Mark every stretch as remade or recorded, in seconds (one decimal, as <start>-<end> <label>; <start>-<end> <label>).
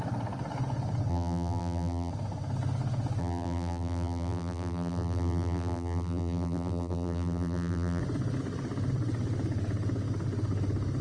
0.0-1.1 recorded; 1.1-2.1 remade; 2.1-3.2 recorded; 3.2-8.0 remade; 8.0-11.0 recorded